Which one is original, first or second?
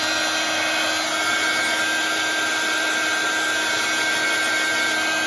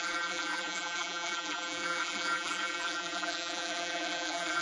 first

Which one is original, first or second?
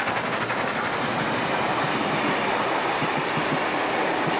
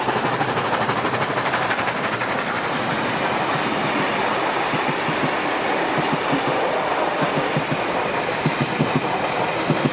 first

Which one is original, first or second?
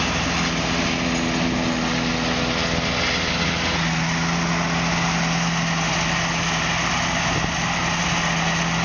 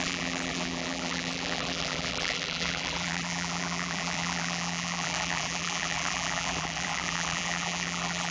first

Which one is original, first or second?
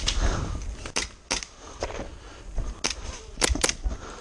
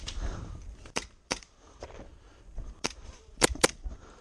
first